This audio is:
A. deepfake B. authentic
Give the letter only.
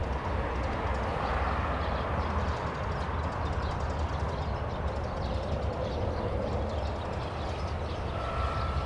B